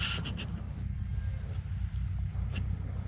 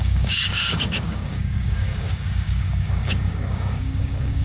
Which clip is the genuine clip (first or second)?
first